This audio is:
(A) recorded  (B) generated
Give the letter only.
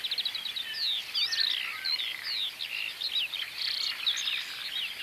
A